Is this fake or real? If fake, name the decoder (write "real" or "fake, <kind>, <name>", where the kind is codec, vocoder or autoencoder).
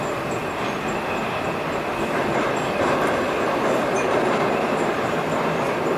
real